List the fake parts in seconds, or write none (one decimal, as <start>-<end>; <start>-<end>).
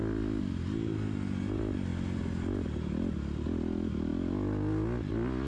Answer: none